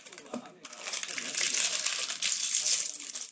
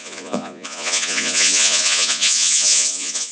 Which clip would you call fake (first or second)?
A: second